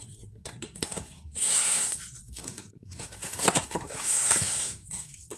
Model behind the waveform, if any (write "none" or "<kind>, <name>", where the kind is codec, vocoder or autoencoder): codec, SNAC